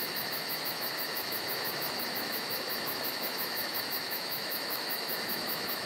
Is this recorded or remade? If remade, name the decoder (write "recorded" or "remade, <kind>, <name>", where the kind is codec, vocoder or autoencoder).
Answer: remade, autoencoder, DAC-VAE